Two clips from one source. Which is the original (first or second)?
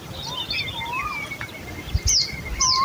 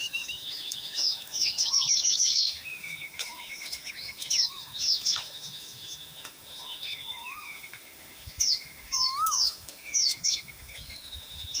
first